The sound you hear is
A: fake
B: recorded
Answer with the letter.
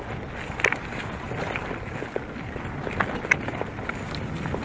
B